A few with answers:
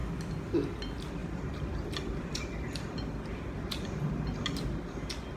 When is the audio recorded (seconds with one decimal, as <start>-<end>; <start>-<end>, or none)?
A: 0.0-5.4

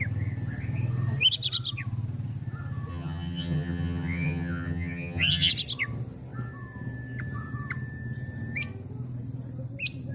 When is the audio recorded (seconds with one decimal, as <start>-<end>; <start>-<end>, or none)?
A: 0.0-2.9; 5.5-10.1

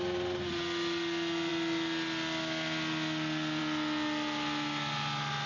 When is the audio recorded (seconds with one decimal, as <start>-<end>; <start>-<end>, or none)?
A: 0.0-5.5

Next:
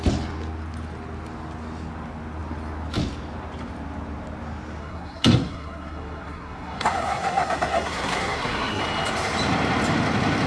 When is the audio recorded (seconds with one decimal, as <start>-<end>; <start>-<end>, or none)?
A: 0.0-4.8; 8.8-10.5

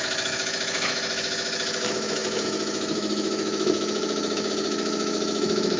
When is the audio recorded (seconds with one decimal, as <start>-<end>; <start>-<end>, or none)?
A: none